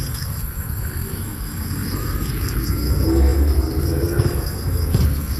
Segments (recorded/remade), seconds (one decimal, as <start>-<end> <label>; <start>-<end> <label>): 0.0-5.4 remade